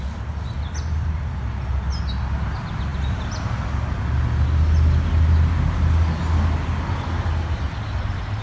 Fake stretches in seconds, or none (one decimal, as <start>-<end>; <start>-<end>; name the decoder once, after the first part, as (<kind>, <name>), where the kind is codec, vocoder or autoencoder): none

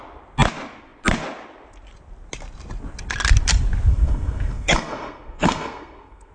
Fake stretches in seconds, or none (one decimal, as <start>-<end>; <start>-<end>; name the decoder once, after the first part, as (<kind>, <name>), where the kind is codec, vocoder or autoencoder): 3.9-6.3 (codec, SNAC)

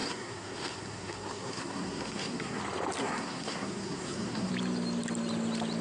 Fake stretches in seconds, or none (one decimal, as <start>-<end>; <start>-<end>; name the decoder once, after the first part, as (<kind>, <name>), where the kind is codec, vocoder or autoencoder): 0.0-2.6 (codec, SNAC); 3.0-4.5

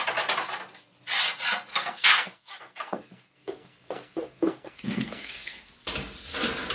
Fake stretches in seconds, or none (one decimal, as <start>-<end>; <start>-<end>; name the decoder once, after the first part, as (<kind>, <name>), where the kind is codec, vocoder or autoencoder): 1.7-5.7 (codec, SNAC)